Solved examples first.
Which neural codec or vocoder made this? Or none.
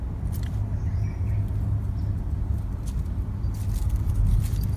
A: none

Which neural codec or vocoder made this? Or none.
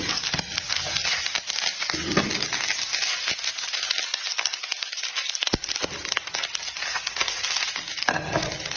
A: none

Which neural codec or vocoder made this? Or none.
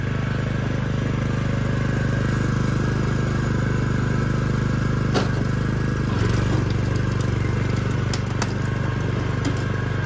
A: none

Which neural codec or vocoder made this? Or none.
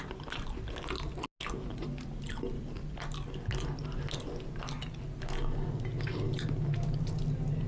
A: none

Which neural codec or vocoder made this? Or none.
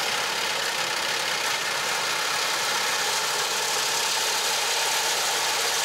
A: none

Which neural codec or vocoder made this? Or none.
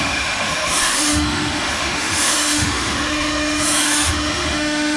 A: autoencoder, DAC-VAE